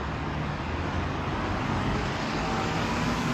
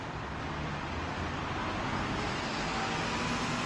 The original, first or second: second